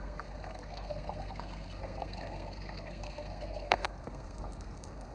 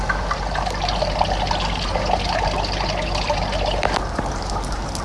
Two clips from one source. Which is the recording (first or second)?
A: second